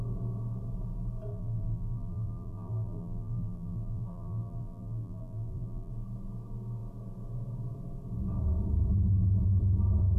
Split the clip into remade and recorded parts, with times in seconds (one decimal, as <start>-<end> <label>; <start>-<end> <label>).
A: 0.0-1.3 recorded; 1.3-5.9 remade; 5.9-10.2 recorded